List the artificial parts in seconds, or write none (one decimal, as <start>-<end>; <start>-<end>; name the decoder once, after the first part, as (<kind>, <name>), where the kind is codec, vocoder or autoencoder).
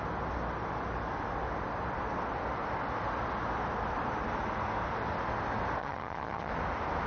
5.8-6.5 (vocoder, HiFi-GAN)